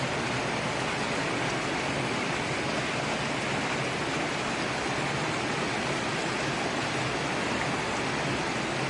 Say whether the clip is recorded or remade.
recorded